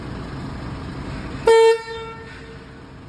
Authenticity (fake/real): real